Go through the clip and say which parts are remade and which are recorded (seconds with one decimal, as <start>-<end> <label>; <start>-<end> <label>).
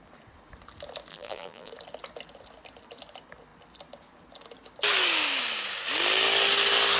0.0-1.1 recorded; 1.1-1.7 remade; 1.7-7.0 recorded